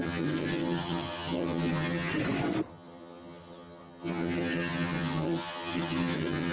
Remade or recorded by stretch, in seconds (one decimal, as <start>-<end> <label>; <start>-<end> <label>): 0.0-2.1 remade; 2.1-2.7 recorded; 2.7-6.5 remade